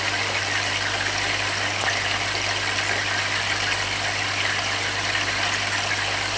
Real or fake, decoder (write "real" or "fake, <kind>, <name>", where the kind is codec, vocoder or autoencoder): real